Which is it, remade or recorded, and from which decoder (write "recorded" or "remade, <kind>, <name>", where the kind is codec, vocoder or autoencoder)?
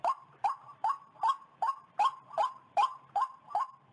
remade, vocoder, BigVGAN v2